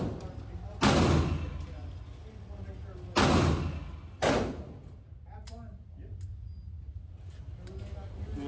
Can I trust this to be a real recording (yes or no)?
yes